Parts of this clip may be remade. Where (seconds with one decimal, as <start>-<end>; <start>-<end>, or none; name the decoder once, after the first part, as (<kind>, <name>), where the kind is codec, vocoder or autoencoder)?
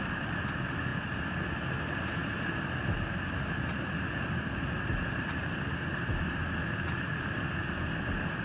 none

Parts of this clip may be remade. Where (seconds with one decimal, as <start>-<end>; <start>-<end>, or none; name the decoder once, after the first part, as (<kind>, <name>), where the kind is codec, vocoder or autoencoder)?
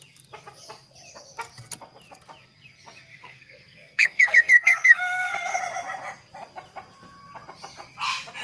3.1-5.6 (codec, SNAC)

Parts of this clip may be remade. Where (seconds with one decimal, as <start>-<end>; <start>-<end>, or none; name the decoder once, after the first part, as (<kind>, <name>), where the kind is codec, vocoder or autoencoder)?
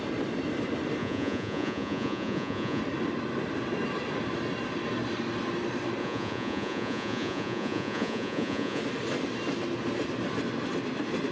1.0-2.8 (vocoder, Vocos); 6.0-8.8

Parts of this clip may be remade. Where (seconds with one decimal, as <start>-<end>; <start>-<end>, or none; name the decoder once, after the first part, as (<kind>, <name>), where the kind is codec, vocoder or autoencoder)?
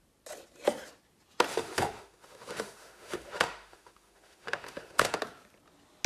1.5-5.2 (autoencoder, DAC-VAE)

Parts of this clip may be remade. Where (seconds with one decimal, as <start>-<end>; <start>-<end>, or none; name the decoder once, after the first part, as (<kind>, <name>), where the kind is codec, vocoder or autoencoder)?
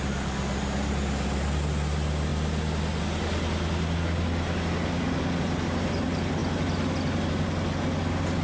none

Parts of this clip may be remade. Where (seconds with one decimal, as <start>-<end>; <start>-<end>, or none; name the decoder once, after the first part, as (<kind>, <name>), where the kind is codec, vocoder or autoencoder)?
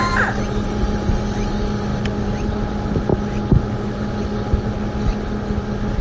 none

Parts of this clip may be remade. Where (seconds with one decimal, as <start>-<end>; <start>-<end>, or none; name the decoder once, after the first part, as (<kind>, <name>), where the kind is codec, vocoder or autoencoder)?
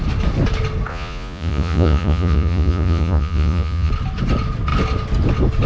0.9-3.9 (vocoder, Vocos)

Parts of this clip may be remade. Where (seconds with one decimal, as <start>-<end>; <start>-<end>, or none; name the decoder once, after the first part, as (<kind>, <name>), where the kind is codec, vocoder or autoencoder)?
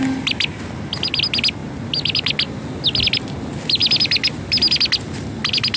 none